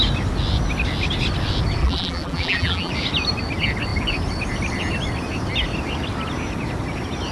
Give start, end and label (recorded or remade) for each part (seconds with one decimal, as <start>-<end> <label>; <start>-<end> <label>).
0.0-1.8 recorded; 1.8-2.9 remade; 2.9-7.3 recorded